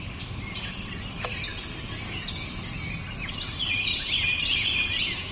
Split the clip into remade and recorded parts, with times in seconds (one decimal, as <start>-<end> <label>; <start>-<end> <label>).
0.0-5.3 recorded